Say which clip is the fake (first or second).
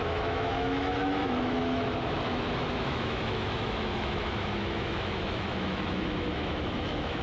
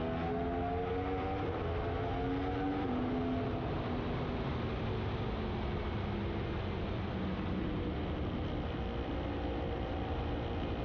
first